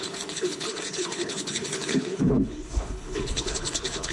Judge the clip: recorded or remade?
remade